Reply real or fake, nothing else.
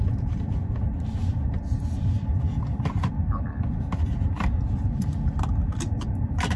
real